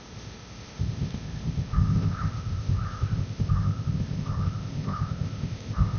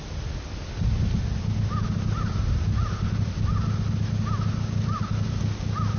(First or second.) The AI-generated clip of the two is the first